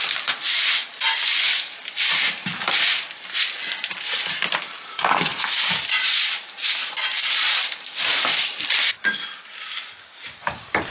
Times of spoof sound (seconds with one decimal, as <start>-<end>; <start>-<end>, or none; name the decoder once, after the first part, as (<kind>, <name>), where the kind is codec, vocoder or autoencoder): 0.0-0.8 (vocoder, BigVGAN v2); 3.9-10.9